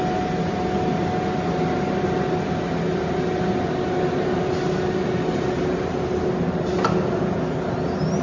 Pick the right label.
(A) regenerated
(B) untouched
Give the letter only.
B